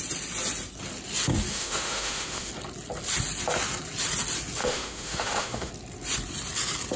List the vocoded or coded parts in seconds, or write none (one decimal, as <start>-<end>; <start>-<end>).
1.5-2.5; 4.6-5.7

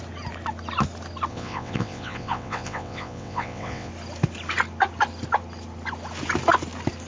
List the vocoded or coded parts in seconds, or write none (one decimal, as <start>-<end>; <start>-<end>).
1.3-3.9